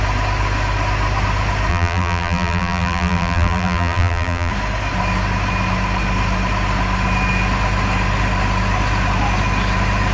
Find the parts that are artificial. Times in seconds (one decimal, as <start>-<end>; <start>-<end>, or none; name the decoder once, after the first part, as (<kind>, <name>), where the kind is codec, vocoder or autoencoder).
1.7-4.5 (vocoder, BigVGAN v2)